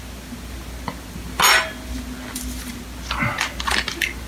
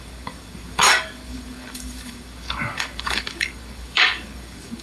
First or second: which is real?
first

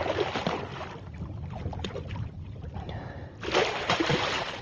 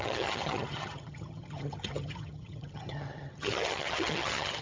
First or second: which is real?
first